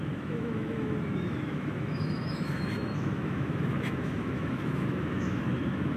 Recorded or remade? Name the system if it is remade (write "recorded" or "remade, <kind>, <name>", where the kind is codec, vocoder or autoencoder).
remade, autoencoder, DAC-VAE